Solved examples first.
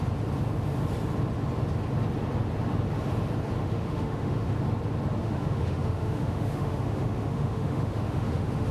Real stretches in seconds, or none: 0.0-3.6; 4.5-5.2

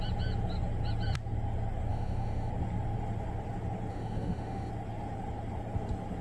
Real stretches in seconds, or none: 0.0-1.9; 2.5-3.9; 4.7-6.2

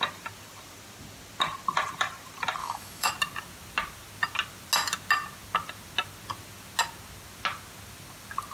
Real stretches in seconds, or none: 0.0-2.6; 3.1-8.5

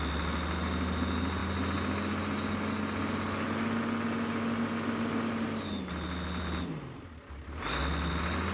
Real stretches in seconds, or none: 0.0-8.5

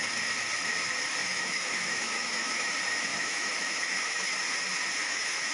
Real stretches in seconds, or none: 0.0-1.2; 2.7-3.1; 4.3-5.0

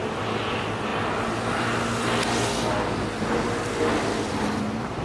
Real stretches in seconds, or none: 0.0-5.0

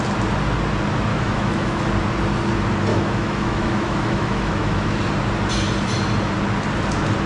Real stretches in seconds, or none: 0.0-1.1; 1.9-2.9; 5.0-7.3

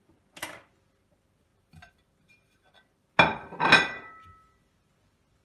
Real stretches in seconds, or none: 0.0-5.4